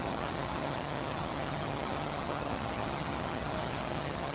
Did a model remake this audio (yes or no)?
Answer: yes